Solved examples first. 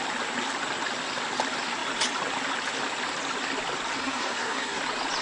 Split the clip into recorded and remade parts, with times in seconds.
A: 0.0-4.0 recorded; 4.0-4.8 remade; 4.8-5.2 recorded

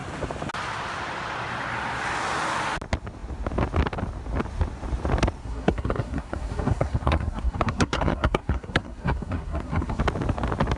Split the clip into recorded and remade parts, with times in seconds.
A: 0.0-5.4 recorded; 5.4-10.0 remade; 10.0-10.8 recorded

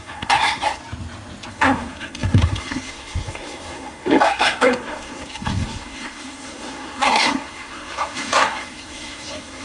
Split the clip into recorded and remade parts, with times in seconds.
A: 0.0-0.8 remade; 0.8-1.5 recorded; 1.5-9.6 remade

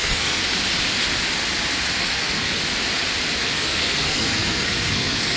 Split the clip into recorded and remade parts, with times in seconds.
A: 0.0-0.4 remade; 0.4-2.0 recorded; 2.0-2.6 remade; 2.6-3.4 recorded; 3.4-5.4 remade

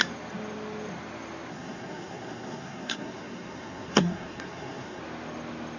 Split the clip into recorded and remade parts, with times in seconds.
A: 0.0-1.5 recorded; 1.5-5.0 remade; 5.0-5.8 recorded